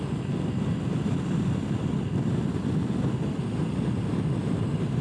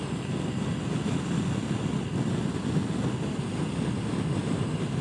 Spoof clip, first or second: first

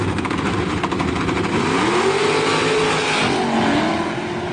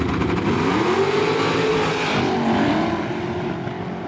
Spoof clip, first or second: second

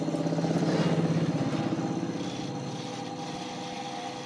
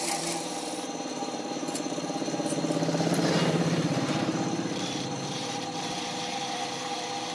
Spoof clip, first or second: second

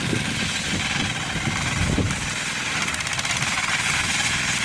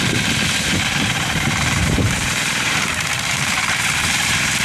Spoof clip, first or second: second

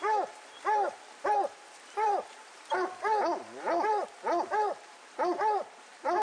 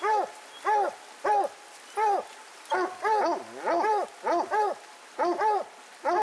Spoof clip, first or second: first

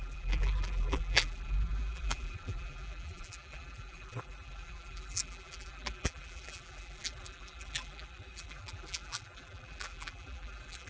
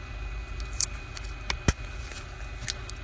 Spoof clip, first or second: first